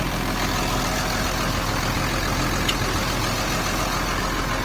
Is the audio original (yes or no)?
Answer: yes